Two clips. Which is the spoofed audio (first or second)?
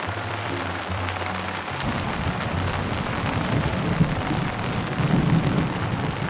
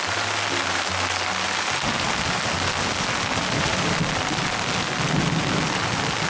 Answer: first